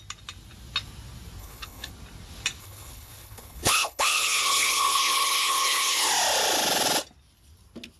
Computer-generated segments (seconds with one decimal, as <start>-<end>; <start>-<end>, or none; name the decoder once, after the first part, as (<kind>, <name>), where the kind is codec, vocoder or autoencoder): 1.4-1.9 (codec, HILCodec); 2.6-6.1